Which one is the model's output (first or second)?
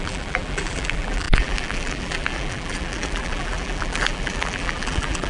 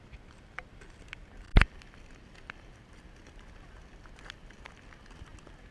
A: first